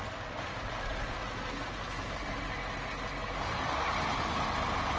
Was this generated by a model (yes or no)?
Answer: no